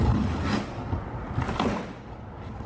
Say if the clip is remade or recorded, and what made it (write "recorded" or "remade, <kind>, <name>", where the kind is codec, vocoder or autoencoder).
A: recorded